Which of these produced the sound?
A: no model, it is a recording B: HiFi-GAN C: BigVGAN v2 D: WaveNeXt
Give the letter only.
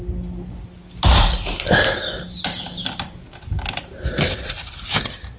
A